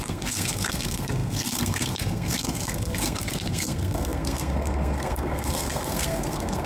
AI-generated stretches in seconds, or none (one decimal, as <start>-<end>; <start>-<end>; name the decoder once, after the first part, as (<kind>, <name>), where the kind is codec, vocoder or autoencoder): 0.0-6.7 (codec, SNAC)